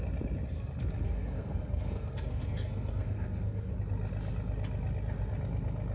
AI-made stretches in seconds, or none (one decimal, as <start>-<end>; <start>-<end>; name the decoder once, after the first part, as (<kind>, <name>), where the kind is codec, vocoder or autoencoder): 1.0-3.7 (codec, SNAC)